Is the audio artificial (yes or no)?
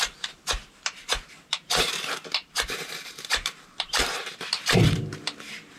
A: yes